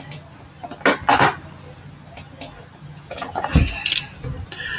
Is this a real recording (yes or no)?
yes